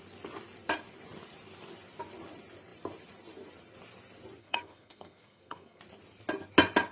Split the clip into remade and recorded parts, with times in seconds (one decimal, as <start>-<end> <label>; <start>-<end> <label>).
0.0-4.4 recorded; 4.4-5.8 remade; 5.8-6.9 recorded